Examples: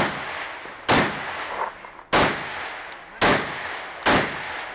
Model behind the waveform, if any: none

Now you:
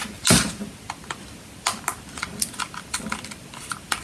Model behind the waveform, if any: none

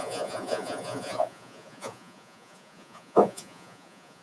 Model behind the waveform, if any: vocoder, Vocos